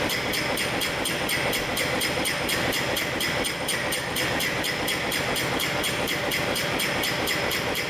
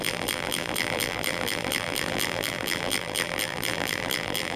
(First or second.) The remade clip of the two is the second